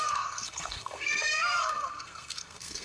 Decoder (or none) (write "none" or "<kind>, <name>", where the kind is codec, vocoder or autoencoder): codec, SNAC